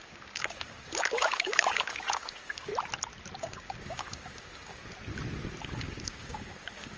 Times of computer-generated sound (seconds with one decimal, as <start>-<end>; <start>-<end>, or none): 0.0-2.7; 3.4-4.8; 5.6-7.0